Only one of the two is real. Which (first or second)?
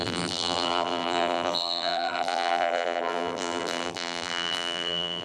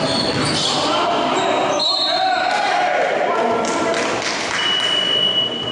second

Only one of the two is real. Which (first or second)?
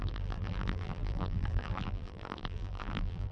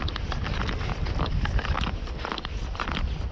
second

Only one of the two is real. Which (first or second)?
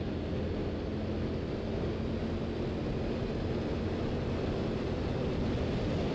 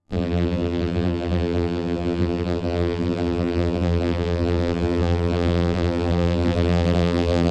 first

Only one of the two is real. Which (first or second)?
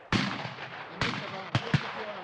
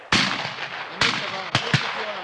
second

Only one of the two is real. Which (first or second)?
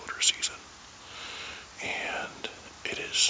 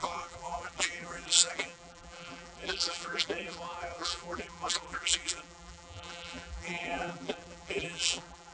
first